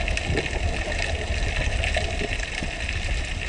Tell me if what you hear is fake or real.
real